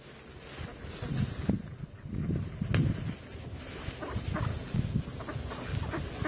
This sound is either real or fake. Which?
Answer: real